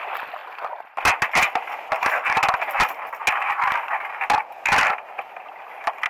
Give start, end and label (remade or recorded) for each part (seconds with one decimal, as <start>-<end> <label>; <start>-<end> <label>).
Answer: 0.0-6.1 recorded